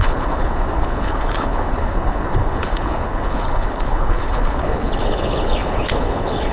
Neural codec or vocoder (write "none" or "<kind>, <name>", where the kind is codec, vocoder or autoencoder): codec, HILCodec